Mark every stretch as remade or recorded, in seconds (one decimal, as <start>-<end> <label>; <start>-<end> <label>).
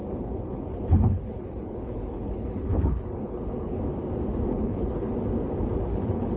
0.0-3.8 remade; 3.8-4.5 recorded; 4.5-5.1 remade; 5.1-5.9 recorded; 5.9-6.4 remade